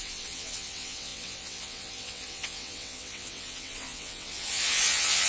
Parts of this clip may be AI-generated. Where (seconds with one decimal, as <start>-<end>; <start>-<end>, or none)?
0.0-5.3